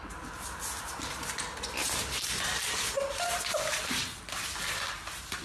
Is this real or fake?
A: real